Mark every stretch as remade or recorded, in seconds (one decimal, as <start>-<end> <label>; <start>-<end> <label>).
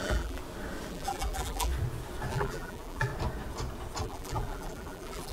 0.0-0.4 remade; 0.4-0.9 recorded; 0.9-1.7 remade; 1.7-2.3 recorded; 2.3-3.1 remade; 3.1-4.0 recorded; 4.0-5.3 remade